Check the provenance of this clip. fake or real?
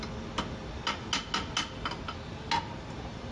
real